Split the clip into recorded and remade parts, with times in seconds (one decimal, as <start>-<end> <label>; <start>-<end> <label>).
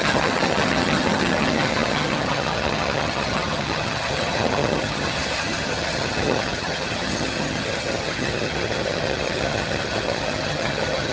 0.0-11.1 remade